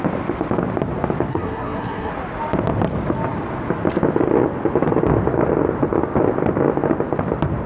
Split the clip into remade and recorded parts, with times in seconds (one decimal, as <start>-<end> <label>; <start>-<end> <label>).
0.0-1.3 recorded; 1.3-2.1 remade; 2.1-7.7 recorded